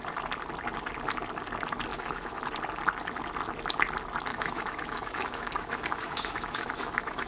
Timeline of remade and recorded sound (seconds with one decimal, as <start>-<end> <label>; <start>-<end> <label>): 0.0-1.9 recorded; 1.9-2.4 remade; 2.4-4.3 recorded; 4.3-7.3 remade